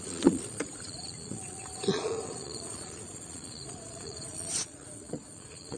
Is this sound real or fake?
fake